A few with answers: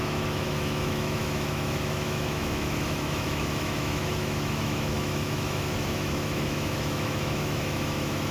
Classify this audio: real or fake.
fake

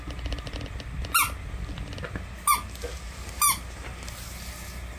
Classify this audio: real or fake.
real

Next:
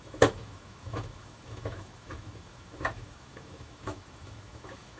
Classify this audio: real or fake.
fake